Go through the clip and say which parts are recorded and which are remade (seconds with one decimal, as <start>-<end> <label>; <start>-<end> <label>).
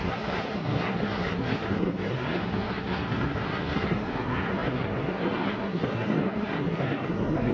0.0-7.5 remade